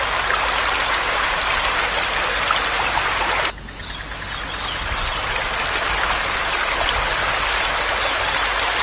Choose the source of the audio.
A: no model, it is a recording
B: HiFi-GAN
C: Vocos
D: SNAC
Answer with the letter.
A